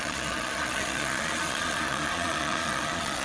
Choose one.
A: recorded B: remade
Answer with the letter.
B